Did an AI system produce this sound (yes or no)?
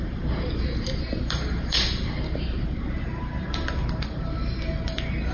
yes